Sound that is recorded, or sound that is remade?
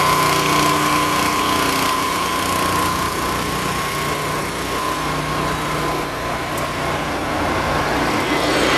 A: recorded